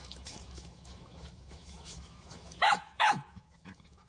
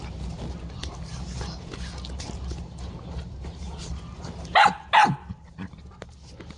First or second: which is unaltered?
second